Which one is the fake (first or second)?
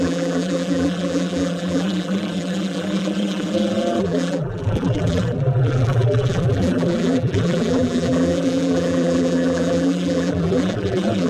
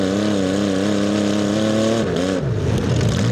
first